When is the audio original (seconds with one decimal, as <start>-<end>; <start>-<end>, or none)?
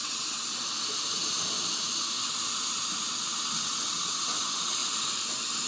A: 0.4-3.4; 4.8-5.7